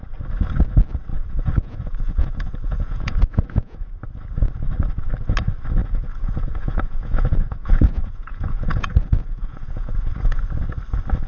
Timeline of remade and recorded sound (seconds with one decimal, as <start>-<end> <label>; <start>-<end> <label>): 0.0-1.1 recorded; 1.1-3.9 remade; 3.9-5.8 recorded; 5.8-10.4 remade; 10.4-11.3 recorded